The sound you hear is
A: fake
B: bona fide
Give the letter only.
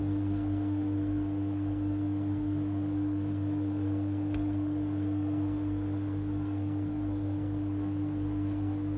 A